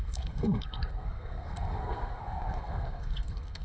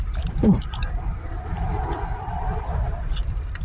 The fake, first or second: first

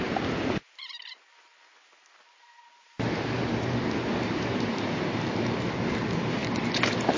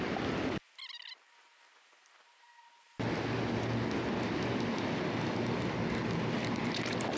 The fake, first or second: first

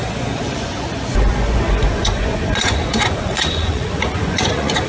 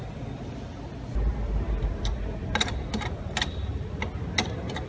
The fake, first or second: first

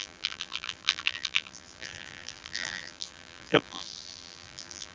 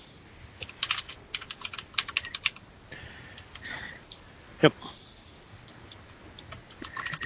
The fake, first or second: first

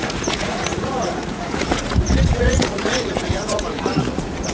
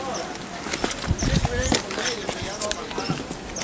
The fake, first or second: first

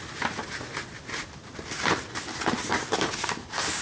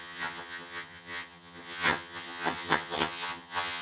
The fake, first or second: second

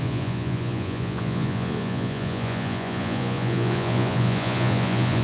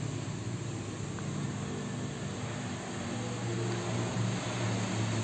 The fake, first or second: first